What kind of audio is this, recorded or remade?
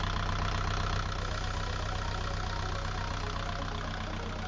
recorded